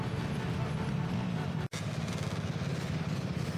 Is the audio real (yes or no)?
yes